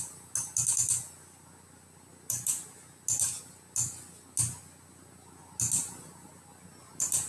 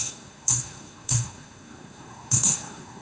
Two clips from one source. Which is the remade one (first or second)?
second